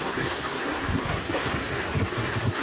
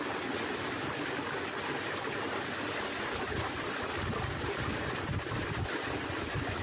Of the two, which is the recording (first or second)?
second